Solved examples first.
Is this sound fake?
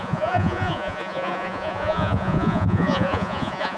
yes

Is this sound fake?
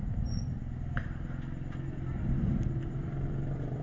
no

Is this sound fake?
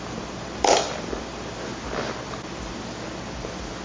yes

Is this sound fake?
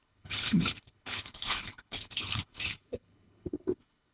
yes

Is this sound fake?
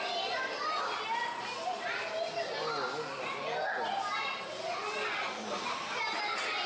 no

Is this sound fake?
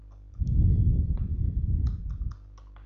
no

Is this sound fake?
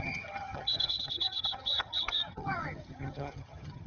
yes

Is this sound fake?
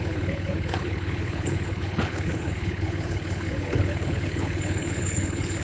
yes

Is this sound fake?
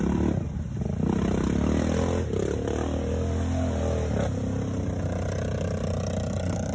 no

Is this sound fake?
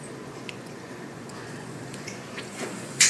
yes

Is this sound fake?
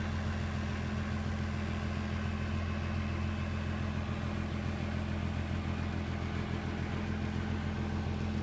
no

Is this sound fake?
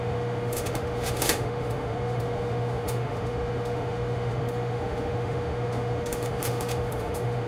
yes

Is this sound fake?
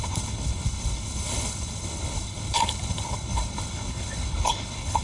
yes